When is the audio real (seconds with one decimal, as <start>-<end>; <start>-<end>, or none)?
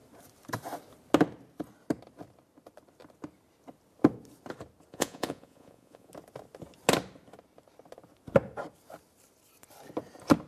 0.0-4.9; 6.1-10.5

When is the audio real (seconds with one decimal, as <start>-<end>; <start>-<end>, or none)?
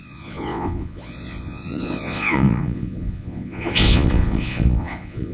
none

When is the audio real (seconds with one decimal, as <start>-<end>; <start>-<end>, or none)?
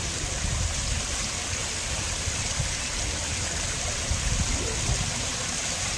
0.0-6.0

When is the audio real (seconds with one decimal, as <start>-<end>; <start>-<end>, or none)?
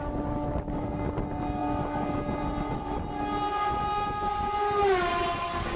0.0-5.8